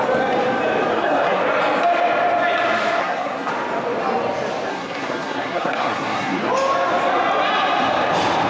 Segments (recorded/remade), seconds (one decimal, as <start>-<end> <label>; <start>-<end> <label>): 0.0-0.9 recorded; 0.9-1.4 remade; 1.4-3.0 recorded; 3.0-3.5 remade; 3.5-4.7 recorded; 4.7-6.5 remade; 6.5-8.5 recorded